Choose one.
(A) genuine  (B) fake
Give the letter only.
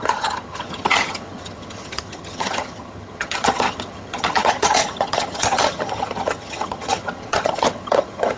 B